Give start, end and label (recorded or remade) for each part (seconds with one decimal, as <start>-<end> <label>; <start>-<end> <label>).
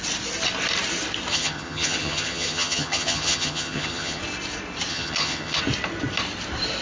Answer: 0.0-1.3 recorded; 1.3-4.2 remade; 4.2-4.9 recorded; 4.9-5.6 remade; 5.6-6.8 recorded